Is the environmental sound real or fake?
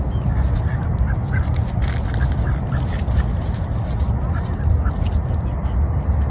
real